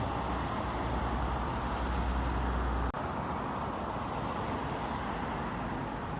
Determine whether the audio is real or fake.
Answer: real